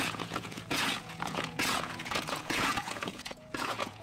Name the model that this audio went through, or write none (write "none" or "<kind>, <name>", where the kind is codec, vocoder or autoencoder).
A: vocoder, Vocos